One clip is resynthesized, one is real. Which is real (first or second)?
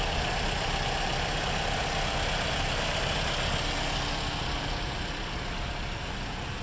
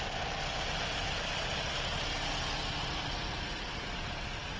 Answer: first